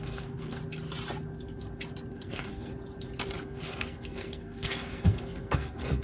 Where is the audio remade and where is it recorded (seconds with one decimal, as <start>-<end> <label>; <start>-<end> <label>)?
0.0-0.6 remade; 0.6-2.1 recorded; 2.1-2.7 remade; 2.7-3.4 recorded; 3.4-6.0 remade